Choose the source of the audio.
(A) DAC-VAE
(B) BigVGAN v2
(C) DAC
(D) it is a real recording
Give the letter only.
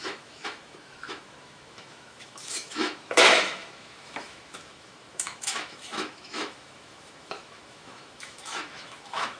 A